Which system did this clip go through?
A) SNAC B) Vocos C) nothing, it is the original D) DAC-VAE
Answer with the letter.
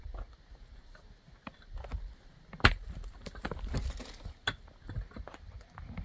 C